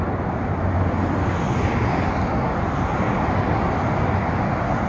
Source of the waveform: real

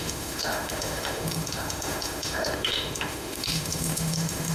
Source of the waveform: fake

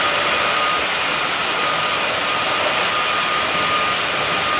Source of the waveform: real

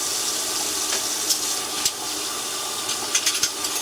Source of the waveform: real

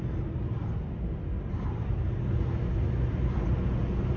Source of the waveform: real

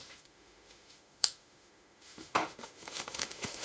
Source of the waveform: fake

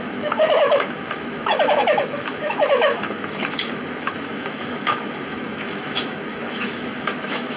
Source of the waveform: fake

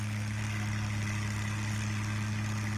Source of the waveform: real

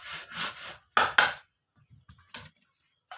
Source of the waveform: real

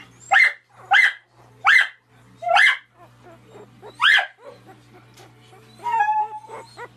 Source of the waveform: real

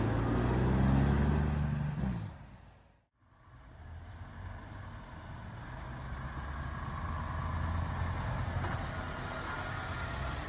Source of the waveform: real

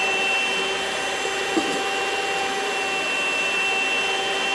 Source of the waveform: real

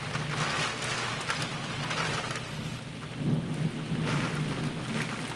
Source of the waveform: real